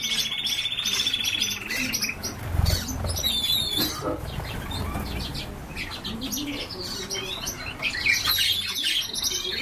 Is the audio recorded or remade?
recorded